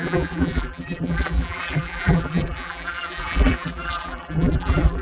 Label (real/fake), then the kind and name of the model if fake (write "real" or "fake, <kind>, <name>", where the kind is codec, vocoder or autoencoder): fake, vocoder, BigVGAN v2